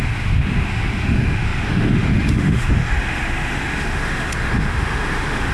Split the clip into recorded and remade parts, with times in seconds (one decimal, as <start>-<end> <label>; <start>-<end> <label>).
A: 0.0-5.5 remade